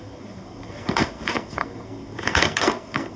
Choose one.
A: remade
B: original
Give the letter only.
A